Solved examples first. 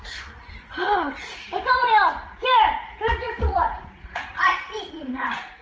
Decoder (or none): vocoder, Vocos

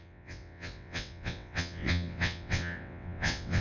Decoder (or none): vocoder, WaveNeXt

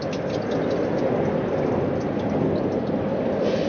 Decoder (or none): none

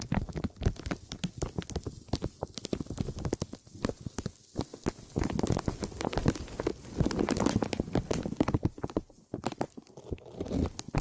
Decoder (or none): none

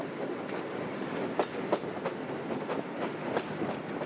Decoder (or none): none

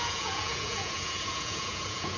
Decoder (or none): vocoder, Vocos